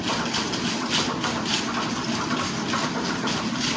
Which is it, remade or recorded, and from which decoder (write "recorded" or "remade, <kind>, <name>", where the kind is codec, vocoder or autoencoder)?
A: recorded